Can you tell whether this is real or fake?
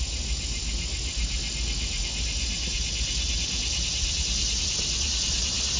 real